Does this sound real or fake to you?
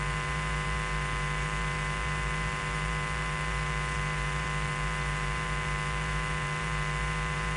fake